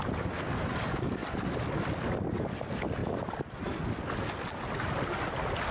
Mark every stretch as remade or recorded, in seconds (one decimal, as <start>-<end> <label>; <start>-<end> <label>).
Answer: 0.0-1.2 recorded; 1.2-1.8 remade; 1.8-3.0 recorded; 3.0-3.8 remade; 3.8-5.7 recorded